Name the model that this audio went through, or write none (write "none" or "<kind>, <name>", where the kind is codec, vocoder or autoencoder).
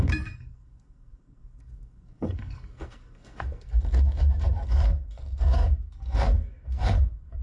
codec, SNAC